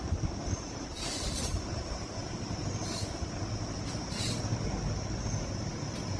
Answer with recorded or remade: remade